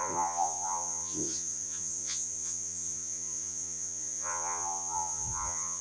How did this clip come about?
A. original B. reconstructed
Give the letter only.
B